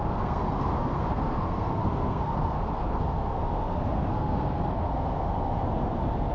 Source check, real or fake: fake